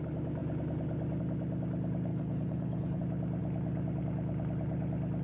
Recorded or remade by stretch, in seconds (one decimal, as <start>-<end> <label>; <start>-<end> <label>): 0.0-2.1 recorded; 2.1-3.0 remade; 3.0-5.2 recorded